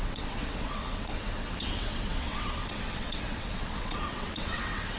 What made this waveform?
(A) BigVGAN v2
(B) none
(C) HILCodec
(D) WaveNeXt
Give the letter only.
D